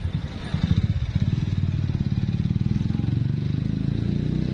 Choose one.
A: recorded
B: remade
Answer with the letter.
A